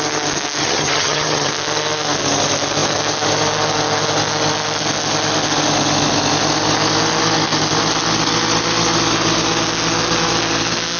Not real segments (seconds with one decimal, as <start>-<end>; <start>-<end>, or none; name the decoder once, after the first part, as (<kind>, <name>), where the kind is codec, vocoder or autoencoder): 0.6-1.5 (vocoder, HiFi-GAN)